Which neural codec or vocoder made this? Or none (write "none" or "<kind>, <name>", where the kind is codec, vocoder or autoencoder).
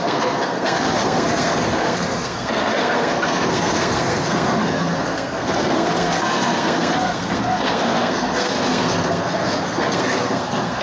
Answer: codec, SNAC